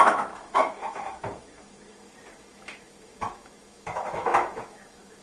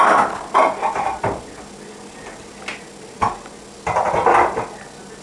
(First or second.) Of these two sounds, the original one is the second